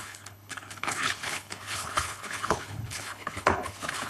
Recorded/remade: remade